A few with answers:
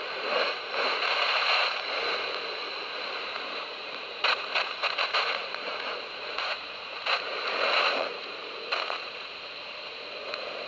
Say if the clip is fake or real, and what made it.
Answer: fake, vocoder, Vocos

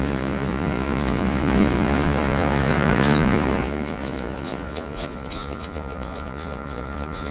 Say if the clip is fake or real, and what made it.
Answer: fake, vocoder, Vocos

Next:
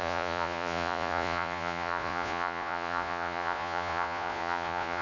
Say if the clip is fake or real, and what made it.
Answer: fake, vocoder, Vocos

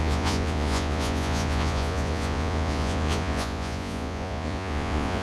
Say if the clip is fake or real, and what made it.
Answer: fake, vocoder, Vocos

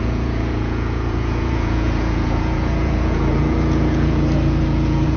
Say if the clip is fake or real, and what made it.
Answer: fake, vocoder, Vocos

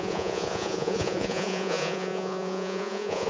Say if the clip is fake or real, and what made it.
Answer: fake, vocoder, Vocos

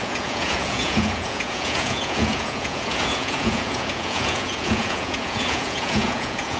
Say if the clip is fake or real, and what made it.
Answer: fake, vocoder, Vocos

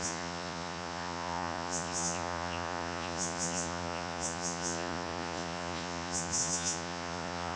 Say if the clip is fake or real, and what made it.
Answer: fake, vocoder, Vocos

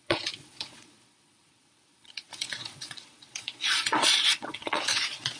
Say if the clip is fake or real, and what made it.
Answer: fake, vocoder, Vocos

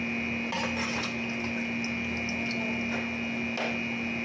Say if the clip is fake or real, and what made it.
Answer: real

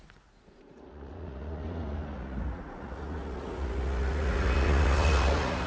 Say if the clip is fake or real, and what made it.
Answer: fake, vocoder, Vocos